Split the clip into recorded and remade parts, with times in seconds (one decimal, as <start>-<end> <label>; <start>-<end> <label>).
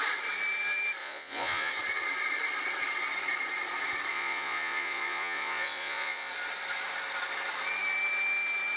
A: 0.0-1.0 recorded; 1.0-1.7 remade; 1.7-4.1 recorded; 4.1-6.3 remade; 6.3-8.8 recorded